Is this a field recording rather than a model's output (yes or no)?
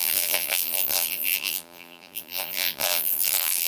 no